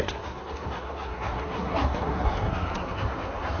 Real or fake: fake